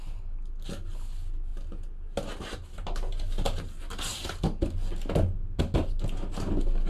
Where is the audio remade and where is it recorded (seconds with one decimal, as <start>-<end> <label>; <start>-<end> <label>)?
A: 0.0-6.9 recorded